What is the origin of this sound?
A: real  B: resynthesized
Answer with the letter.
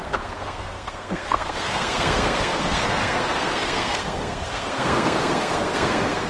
B